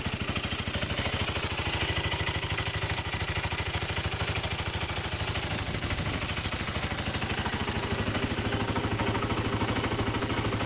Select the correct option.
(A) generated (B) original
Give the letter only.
B